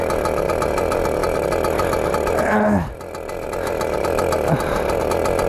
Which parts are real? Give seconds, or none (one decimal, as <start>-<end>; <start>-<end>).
0.0-5.5